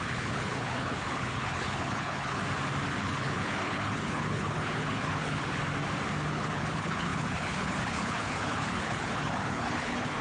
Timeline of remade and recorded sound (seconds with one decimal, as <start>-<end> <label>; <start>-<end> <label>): 0.0-2.4 remade; 2.4-3.0 recorded; 3.0-5.6 remade; 5.6-6.3 recorded; 6.3-10.2 remade